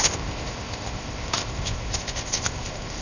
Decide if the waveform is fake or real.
fake